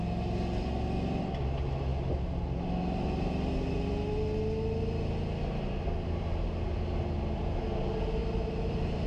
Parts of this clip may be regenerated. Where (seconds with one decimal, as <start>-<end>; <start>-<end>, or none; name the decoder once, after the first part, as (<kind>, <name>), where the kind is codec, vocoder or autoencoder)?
8.2-9.1 (vocoder, BigVGAN v2)